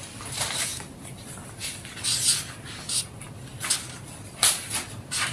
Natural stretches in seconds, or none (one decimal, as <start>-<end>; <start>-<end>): 0.0-5.3